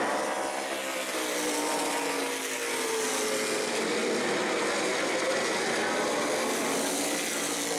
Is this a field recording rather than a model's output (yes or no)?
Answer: yes